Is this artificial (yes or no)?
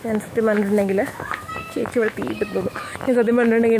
yes